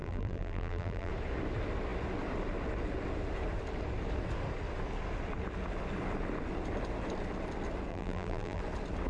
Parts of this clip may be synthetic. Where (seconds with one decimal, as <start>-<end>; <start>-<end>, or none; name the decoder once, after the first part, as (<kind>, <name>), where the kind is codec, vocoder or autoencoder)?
0.0-1.1 (vocoder, BigVGAN v2); 7.9-8.6